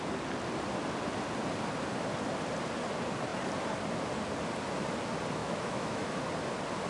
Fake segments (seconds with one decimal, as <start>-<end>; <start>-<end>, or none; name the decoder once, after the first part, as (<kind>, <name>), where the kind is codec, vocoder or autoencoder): 5.4-6.2 (autoencoder, DAC-VAE)